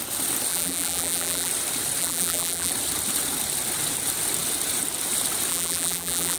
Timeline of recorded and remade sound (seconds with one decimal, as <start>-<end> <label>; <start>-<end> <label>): 0.0-0.5 recorded; 0.5-1.5 remade; 1.5-2.0 recorded; 2.0-2.7 remade; 2.7-5.5 recorded; 5.5-6.4 remade